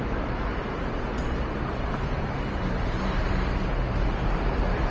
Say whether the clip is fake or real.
fake